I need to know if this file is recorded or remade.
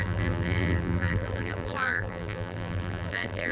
remade